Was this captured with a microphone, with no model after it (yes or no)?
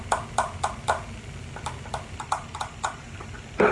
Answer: yes